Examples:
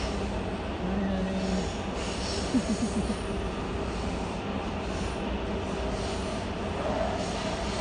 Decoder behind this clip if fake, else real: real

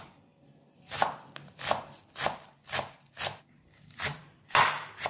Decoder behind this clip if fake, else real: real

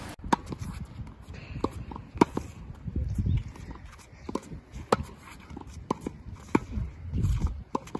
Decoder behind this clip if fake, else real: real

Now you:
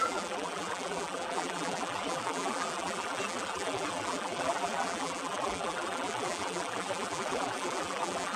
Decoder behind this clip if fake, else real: fake, vocoder, BigVGAN v2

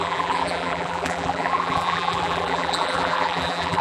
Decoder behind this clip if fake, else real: fake, vocoder, BigVGAN v2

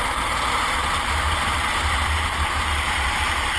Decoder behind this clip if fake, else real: fake, vocoder, BigVGAN v2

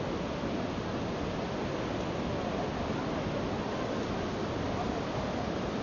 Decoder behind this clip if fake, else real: real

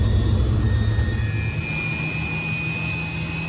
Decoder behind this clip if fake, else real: real